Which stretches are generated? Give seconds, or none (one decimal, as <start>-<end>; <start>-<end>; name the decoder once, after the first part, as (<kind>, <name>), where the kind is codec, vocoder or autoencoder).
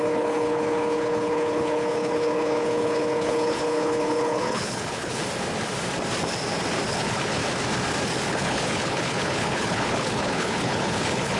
0.0-5.2 (codec, HILCodec); 6.9-7.4; 8.3-11.4